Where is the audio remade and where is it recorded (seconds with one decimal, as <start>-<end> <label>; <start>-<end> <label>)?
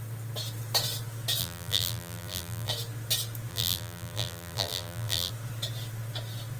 0.0-1.4 recorded; 1.4-2.7 remade; 2.7-3.5 recorded; 3.5-5.3 remade; 5.3-6.6 recorded